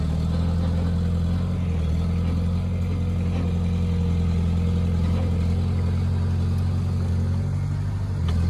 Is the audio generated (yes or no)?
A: no